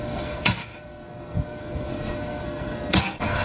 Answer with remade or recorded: remade